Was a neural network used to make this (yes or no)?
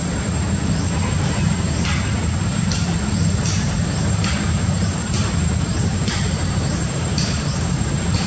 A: yes